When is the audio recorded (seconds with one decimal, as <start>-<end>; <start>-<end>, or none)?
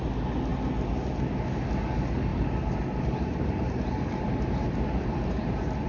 0.0-2.3